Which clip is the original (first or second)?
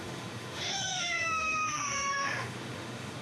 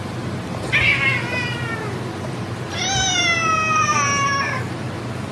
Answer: second